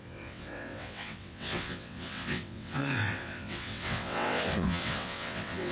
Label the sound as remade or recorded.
remade